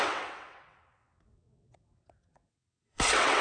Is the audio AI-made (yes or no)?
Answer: yes